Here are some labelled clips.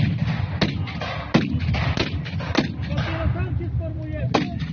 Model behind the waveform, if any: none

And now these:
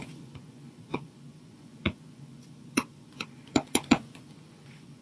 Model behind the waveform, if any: vocoder, Vocos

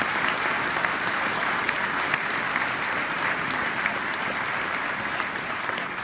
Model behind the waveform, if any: none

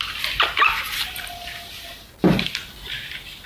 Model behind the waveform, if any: none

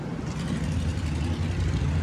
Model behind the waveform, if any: none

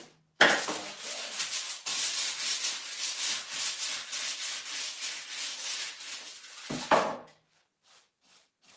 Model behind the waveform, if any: none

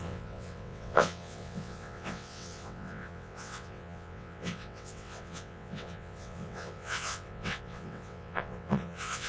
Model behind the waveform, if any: vocoder, WaveNeXt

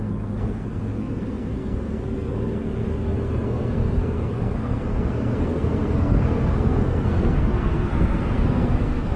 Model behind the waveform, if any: codec, SNAC